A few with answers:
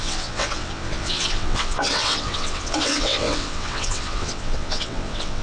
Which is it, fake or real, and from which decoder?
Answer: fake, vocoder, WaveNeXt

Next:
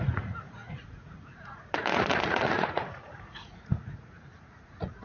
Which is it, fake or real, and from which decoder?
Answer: fake, vocoder, Vocos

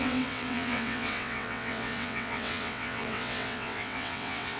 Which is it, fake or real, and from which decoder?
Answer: fake, vocoder, WaveNeXt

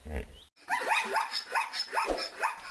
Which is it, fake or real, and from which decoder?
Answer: real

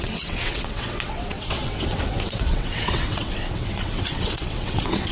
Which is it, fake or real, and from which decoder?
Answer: fake, vocoder, WaveNeXt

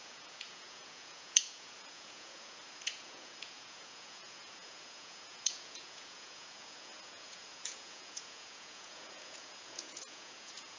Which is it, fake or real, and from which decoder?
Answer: fake, vocoder, Vocos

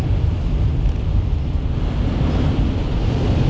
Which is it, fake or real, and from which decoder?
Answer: fake, vocoder, BigVGAN v2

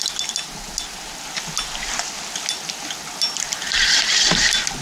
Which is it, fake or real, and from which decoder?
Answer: real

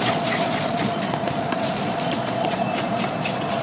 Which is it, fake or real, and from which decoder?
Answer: fake, vocoder, Vocos